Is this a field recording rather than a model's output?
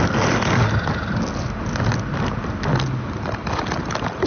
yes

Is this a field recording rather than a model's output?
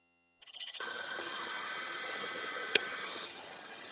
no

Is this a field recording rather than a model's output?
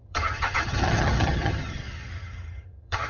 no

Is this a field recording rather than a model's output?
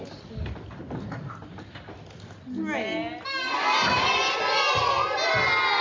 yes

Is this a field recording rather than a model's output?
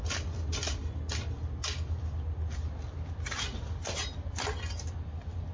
yes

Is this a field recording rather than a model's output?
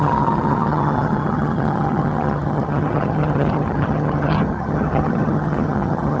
no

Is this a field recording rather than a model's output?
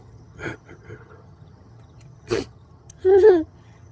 no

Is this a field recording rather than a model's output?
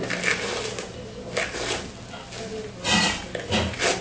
yes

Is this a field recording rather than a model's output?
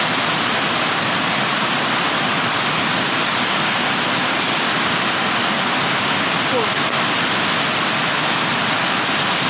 yes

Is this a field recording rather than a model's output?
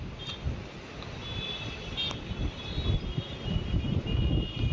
yes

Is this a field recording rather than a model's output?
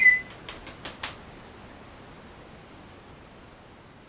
yes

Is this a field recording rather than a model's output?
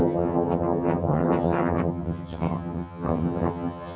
no